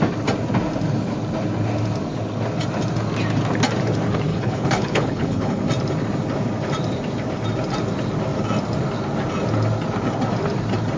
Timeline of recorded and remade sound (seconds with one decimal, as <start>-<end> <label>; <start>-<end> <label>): 0.0-4.3 recorded; 4.3-5.6 remade; 5.6-11.0 recorded